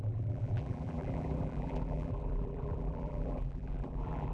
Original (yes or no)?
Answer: no